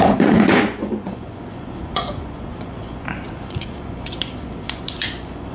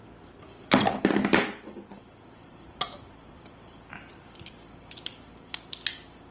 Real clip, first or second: second